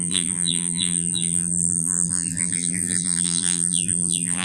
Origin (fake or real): fake